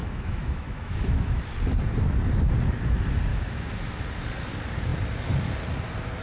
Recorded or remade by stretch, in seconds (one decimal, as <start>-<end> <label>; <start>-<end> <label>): 0.0-1.4 remade; 1.4-3.3 recorded; 3.3-4.0 remade; 4.0-6.2 recorded